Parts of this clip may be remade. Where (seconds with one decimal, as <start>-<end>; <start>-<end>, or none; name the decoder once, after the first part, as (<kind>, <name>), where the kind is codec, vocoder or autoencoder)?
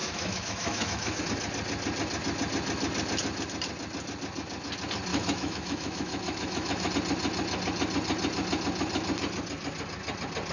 0.0-1.2 (autoencoder, DAC-VAE); 5.1-6.9